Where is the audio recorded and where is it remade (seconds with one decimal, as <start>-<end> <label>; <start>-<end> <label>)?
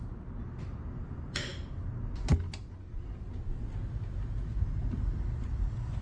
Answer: 0.0-6.0 recorded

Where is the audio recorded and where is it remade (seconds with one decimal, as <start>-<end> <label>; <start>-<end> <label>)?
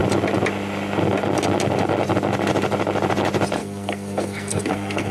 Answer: 0.0-3.6 recorded; 3.6-5.1 remade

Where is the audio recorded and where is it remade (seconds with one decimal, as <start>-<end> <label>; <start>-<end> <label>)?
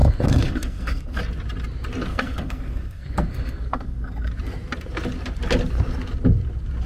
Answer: 0.0-1.2 remade; 1.2-2.1 recorded; 2.1-4.3 remade; 4.3-6.9 recorded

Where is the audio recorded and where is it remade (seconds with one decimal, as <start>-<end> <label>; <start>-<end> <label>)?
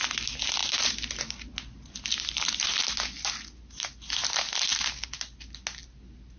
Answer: 0.0-6.4 recorded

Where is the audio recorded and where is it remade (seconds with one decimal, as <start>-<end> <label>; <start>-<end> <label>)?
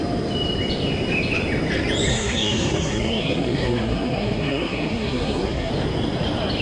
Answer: 0.0-2.1 recorded; 2.1-5.7 remade; 5.7-6.6 recorded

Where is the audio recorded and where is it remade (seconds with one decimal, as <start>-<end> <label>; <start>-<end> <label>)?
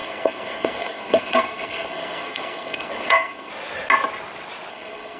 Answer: 0.0-3.5 remade; 3.5-4.7 recorded; 4.7-5.2 remade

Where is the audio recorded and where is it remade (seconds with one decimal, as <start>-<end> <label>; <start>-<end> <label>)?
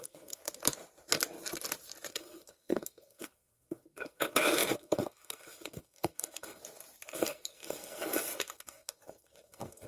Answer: 0.0-0.4 remade; 0.4-2.1 recorded; 2.1-6.6 remade; 6.6-7.1 recorded; 7.1-9.9 remade